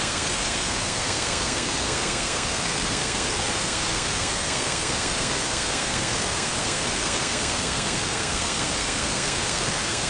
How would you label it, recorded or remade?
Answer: remade